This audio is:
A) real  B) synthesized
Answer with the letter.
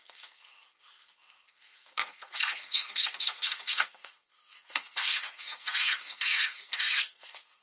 B